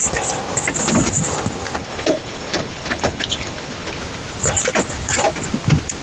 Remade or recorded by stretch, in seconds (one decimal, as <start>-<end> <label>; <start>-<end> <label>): 0.0-1.8 recorded; 1.8-4.0 remade; 4.0-6.0 recorded